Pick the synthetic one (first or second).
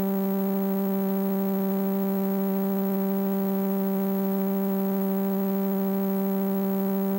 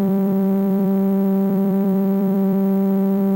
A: second